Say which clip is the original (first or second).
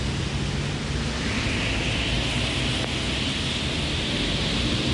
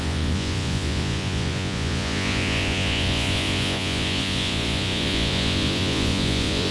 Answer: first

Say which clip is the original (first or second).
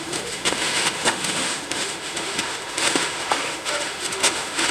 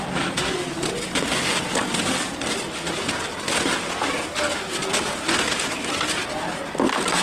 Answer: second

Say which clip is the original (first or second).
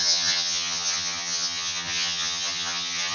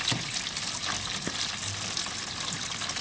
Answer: second